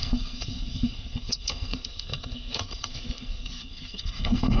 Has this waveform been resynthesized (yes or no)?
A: yes